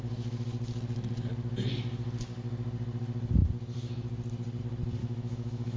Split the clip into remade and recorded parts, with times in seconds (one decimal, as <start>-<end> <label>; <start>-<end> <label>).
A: 0.0-5.0 recorded; 5.0-5.8 remade